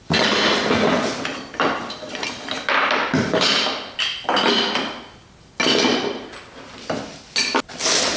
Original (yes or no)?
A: yes